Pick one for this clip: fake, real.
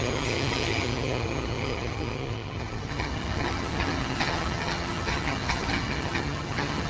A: fake